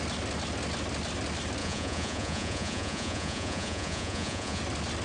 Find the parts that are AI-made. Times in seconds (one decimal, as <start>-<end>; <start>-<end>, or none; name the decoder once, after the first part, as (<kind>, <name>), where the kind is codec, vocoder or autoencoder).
1.6-4.6 (vocoder, Vocos)